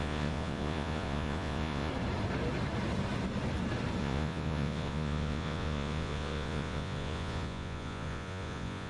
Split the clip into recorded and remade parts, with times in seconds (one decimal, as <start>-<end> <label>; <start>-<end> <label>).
0.0-1.9 remade; 1.9-4.0 recorded; 4.0-8.9 remade